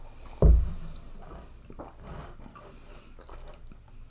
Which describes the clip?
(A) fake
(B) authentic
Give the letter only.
B